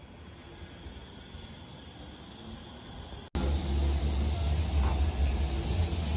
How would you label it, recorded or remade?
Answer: recorded